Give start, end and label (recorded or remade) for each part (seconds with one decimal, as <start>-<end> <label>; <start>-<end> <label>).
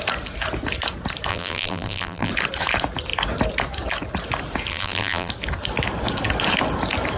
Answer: 0.0-1.3 recorded; 1.3-2.3 remade; 2.3-4.7 recorded; 4.7-5.3 remade; 5.3-7.2 recorded